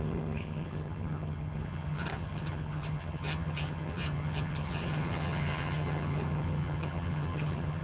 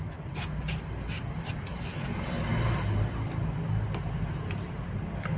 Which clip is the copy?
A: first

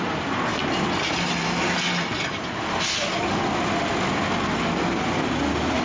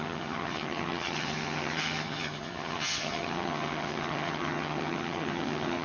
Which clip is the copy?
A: second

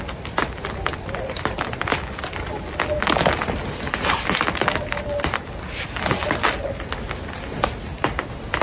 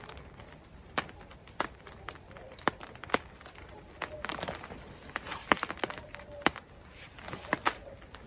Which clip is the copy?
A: second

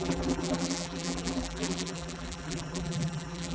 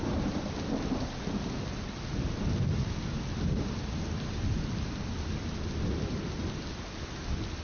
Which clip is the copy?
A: first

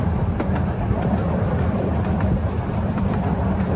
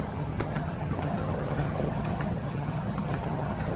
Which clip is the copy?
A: second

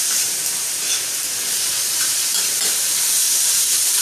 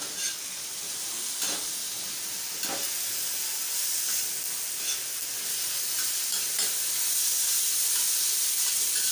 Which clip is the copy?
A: first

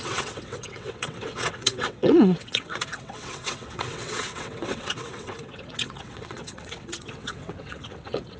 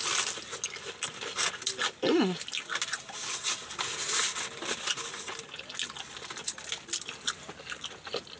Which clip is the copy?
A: first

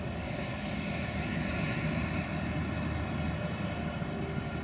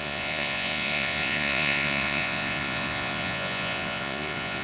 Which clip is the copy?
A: second